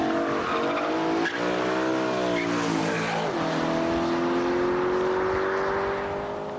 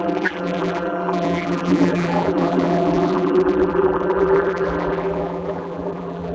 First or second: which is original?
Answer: first